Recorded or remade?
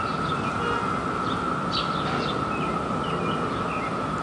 recorded